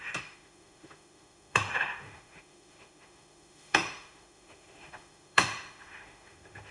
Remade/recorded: remade